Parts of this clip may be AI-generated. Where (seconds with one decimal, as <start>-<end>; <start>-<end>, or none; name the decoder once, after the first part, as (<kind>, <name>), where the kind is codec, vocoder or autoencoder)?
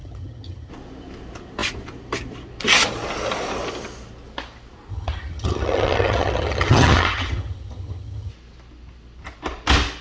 0.0-0.7 (vocoder, HiFi-GAN); 4.9-8.3